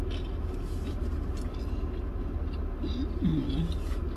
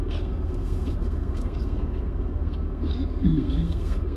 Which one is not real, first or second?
second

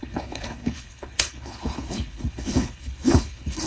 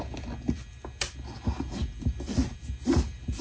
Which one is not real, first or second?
first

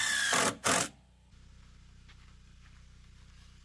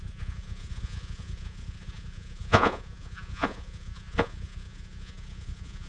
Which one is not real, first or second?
second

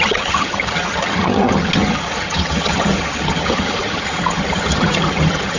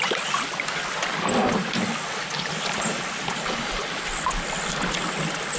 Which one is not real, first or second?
first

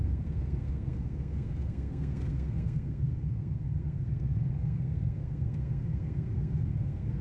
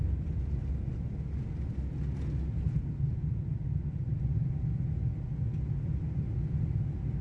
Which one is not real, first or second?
first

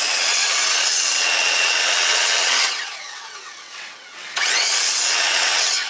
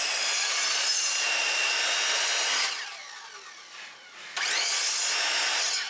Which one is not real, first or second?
first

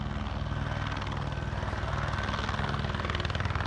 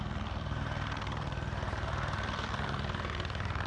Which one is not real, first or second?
second